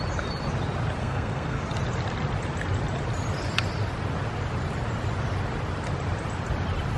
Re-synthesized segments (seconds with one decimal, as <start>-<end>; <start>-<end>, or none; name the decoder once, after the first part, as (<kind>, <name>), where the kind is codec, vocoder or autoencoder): 1.0-1.6 (codec, SNAC)